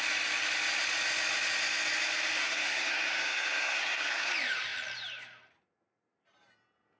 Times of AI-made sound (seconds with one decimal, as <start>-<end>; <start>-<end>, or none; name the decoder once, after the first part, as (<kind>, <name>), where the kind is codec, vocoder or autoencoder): 2.4-4.3 (codec, SNAC)